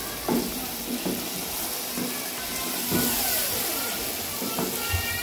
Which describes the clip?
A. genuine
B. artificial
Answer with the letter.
A